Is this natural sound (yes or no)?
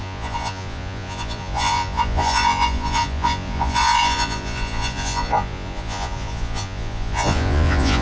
no